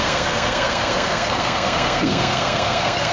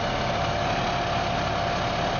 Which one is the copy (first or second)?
first